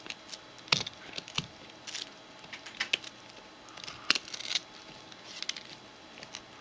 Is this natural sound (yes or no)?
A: yes